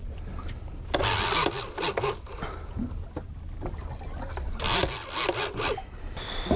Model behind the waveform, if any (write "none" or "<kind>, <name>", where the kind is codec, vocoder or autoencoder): none